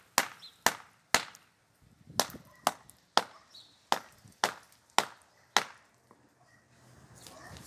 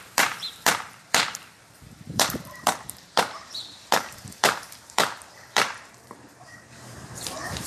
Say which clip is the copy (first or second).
second